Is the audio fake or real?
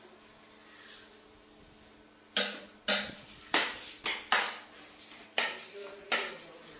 real